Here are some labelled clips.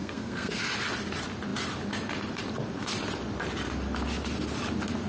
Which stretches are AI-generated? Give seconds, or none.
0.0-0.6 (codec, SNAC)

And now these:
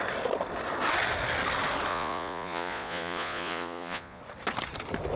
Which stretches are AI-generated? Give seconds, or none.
1.9-4.2 (vocoder, Vocos)

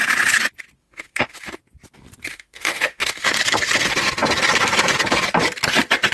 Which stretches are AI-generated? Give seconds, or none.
0.8-1.6 (autoencoder, DAC-VAE); 2.3-3.3

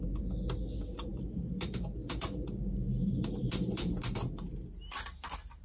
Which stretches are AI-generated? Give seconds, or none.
none